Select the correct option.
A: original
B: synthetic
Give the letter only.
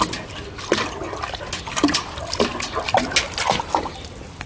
A